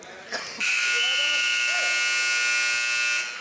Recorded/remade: recorded